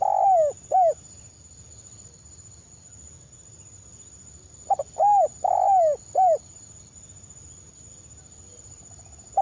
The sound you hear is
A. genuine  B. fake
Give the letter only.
A